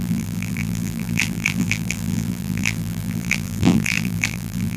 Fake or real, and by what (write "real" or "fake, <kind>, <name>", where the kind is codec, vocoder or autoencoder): fake, vocoder, BigVGAN v2